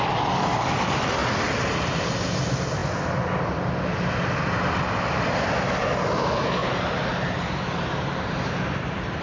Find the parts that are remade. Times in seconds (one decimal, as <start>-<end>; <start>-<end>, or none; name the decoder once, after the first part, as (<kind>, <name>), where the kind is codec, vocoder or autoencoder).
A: 6.6-9.2 (vocoder, BigVGAN v2)